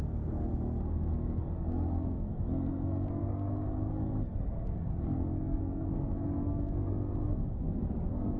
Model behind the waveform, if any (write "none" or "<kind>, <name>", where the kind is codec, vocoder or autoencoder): codec, SNAC